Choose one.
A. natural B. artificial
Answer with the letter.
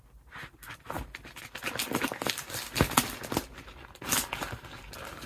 A